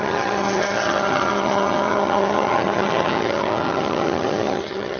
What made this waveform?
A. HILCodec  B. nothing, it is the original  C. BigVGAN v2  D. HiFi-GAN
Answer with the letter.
D